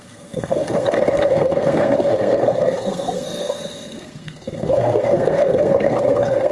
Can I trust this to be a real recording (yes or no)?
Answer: no